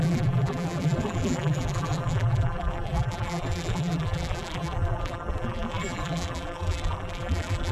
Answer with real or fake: fake